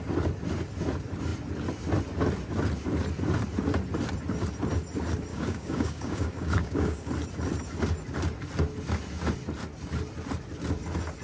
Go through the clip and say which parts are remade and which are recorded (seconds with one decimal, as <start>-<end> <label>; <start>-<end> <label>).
0.0-5.3 recorded; 5.3-7.1 remade; 7.1-11.2 recorded